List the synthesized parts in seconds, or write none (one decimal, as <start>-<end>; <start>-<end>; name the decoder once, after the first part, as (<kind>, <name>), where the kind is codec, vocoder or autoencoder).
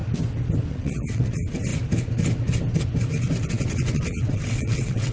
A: 0.7-1.7 (vocoder, WaveNeXt); 3.5-5.1